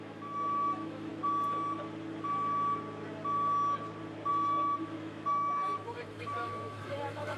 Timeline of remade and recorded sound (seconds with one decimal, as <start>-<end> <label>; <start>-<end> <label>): 0.0-1.1 remade; 1.1-4.3 recorded; 4.3-7.4 remade